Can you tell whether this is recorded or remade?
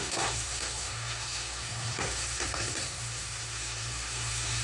remade